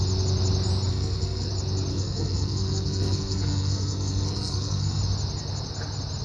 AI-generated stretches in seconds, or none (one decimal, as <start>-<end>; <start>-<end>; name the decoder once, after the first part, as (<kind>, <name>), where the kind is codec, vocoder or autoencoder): 0.9-1.5 (codec, SNAC); 1.9-5.0